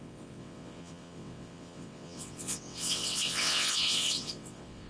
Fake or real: fake